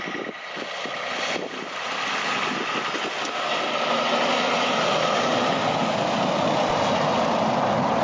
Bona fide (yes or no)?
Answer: yes